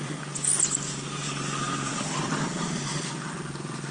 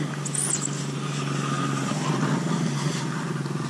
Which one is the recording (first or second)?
second